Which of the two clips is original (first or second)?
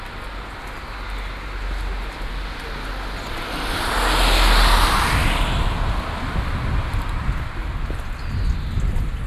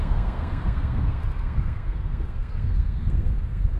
first